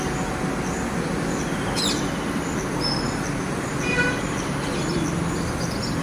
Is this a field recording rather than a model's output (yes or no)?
yes